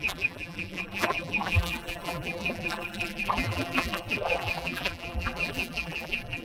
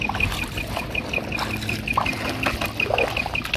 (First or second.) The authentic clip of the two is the second